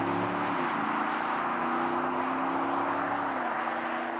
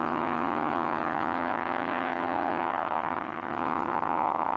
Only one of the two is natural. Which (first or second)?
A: first